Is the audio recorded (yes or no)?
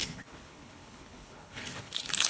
no